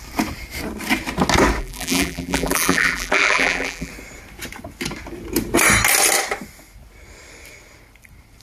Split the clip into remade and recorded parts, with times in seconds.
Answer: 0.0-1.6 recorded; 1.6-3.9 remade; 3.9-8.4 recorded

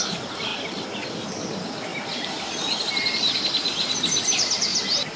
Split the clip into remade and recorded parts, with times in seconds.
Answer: 0.0-5.2 recorded

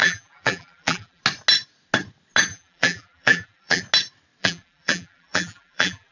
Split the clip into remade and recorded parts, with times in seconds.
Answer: 0.0-1.2 remade; 1.2-2.5 recorded; 2.5-3.8 remade; 3.8-4.4 recorded; 4.4-6.1 remade

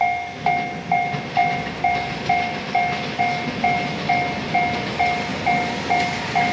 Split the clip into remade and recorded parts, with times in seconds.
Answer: 0.0-6.5 recorded

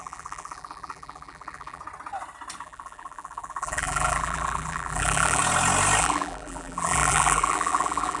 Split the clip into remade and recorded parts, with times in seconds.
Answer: 0.0-1.8 remade; 1.8-2.6 recorded; 2.6-5.4 remade; 5.4-6.0 recorded; 6.0-8.2 remade

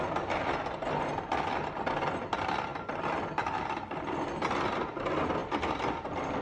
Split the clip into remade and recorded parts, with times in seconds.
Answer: 0.0-2.7 recorded; 2.7-4.3 remade; 4.3-5.4 recorded; 5.4-6.0 remade; 6.0-6.4 recorded

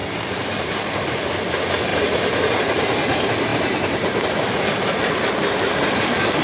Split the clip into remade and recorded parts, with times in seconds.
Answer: 0.0-1.0 remade; 1.0-1.9 recorded; 1.9-2.5 remade; 2.5-3.5 recorded; 3.5-4.9 remade; 4.9-6.4 recorded